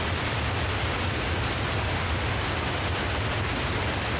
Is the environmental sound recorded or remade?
recorded